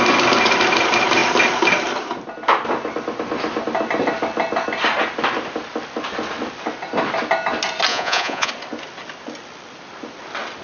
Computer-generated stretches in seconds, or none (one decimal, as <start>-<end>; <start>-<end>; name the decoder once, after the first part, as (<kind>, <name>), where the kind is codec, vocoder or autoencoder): 7.9-8.5 (vocoder, Vocos)